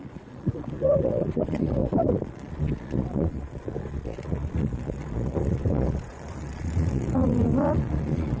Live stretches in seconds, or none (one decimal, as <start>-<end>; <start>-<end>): none